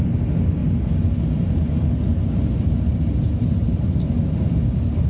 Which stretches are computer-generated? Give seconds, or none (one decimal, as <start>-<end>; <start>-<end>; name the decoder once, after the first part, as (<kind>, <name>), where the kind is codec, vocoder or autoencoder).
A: none